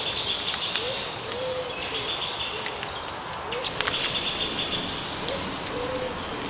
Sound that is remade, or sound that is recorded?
recorded